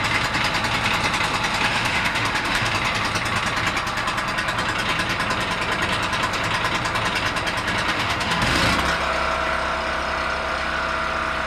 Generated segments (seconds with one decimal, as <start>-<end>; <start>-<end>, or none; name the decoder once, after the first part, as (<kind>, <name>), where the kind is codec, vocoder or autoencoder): 1.7-2.7 (autoencoder, DAC-VAE); 7.9-8.6